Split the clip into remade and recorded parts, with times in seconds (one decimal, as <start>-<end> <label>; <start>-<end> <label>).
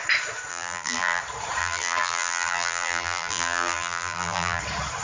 0.0-0.5 recorded; 0.5-1.2 remade; 1.2-1.6 recorded; 1.6-4.6 remade; 4.6-5.0 recorded